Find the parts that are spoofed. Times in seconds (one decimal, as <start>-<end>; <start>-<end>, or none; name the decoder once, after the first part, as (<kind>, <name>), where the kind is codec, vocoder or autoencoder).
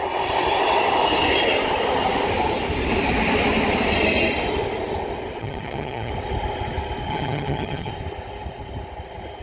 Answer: 5.4-6.1 (vocoder, HiFi-GAN); 7.1-7.9